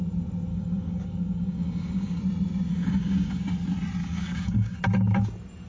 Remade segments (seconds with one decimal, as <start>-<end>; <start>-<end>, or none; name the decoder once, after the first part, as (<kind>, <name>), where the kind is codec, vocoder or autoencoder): 0.5-2.2 (codec, DAC); 2.7-3.4; 4.0-4.8